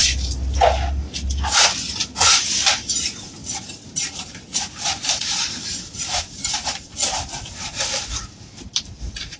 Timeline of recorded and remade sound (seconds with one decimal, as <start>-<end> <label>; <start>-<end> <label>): 0.0-2.4 recorded; 2.4-9.4 remade